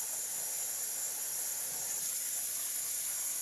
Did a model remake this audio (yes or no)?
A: no